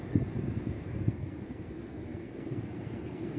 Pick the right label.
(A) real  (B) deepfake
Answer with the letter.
B